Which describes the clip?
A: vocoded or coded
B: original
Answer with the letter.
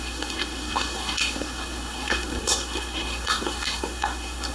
A